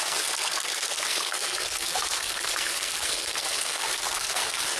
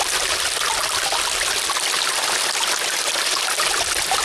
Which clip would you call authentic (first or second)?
second